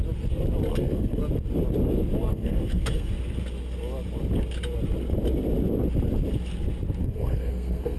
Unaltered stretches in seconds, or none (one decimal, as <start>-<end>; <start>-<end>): 0.0-0.7; 1.2-2.3; 3.1-7.0